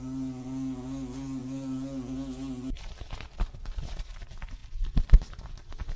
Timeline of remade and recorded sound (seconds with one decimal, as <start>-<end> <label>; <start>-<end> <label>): 0.0-6.0 recorded